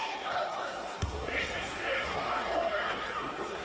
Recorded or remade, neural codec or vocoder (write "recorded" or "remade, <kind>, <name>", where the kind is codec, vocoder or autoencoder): remade, codec, SNAC